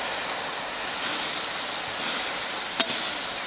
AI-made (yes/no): no